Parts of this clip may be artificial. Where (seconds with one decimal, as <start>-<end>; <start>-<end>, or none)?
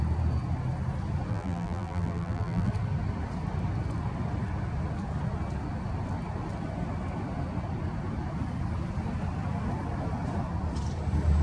1.3-2.7